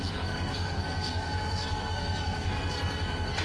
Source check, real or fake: fake